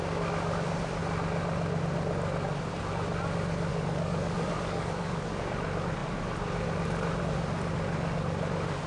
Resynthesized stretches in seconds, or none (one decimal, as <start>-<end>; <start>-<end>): 3.7-5.4